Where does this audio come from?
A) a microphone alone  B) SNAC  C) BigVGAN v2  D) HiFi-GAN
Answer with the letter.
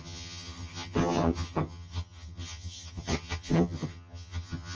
D